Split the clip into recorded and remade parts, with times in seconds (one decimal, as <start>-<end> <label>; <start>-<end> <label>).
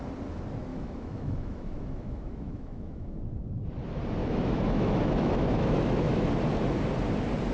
0.0-0.7 recorded; 0.7-3.2 remade; 3.2-4.2 recorded; 4.2-6.3 remade; 6.3-7.5 recorded